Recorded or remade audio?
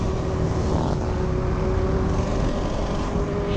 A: recorded